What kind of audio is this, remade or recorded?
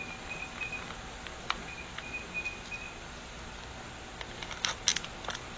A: recorded